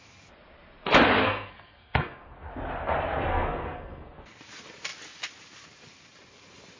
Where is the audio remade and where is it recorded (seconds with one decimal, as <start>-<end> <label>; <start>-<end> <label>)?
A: 0.0-1.2 recorded; 1.2-2.5 remade; 2.5-3.3 recorded; 3.3-4.4 remade; 4.4-6.8 recorded